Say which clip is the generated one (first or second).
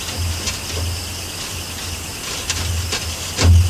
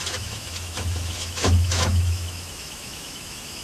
second